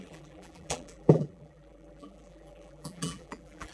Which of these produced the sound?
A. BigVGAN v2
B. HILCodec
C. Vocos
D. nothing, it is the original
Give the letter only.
A